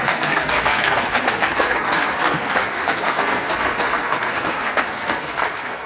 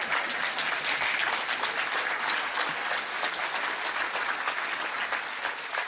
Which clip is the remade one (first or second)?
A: first